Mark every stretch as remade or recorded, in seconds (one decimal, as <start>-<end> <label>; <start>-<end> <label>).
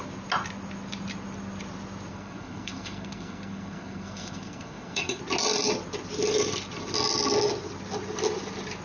0.0-2.1 recorded; 2.1-5.2 remade; 5.2-8.8 recorded